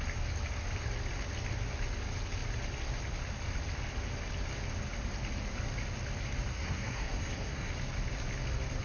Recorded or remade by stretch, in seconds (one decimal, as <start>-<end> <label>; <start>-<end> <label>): 0.0-6.5 recorded; 6.5-7.7 remade; 7.7-8.8 recorded